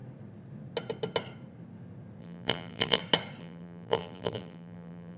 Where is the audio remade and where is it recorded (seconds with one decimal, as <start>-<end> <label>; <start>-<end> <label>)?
0.0-2.2 recorded; 2.2-3.0 remade; 3.0-3.4 recorded; 3.4-5.2 remade